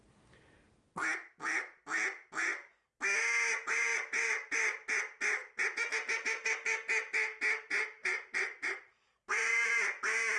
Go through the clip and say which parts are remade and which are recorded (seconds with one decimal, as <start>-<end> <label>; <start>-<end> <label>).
0.0-8.0 recorded; 8.0-9.7 remade; 9.7-10.4 recorded